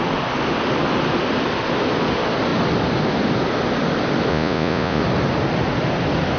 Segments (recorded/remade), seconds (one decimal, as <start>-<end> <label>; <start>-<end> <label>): 0.0-4.3 recorded; 4.3-5.0 remade; 5.0-6.4 recorded